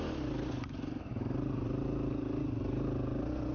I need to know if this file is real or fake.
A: real